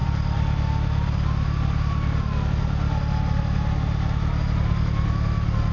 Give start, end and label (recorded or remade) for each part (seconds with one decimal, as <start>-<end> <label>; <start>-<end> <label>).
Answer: 0.0-5.7 recorded